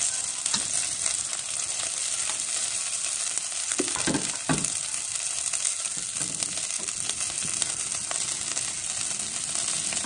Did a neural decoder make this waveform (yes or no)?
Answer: no